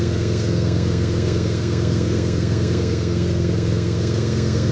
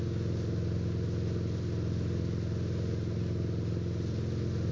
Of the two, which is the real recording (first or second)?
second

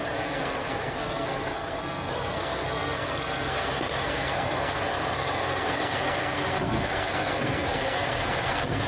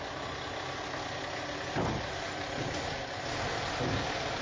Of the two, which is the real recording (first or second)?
second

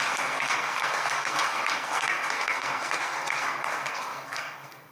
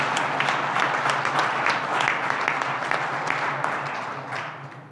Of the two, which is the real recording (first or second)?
second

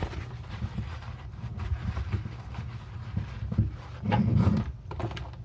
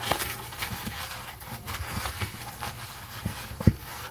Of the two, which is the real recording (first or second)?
first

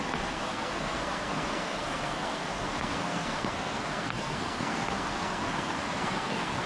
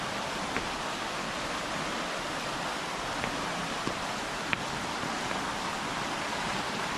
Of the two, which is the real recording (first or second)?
second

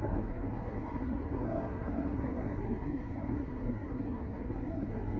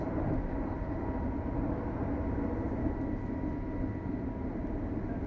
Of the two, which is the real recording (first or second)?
second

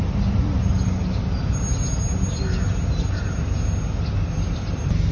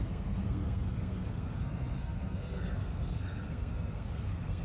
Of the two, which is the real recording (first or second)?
first